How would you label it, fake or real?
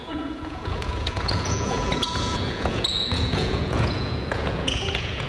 fake